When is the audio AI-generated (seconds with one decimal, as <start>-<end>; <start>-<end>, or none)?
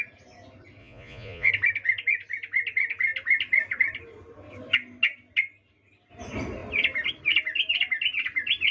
0.8-1.5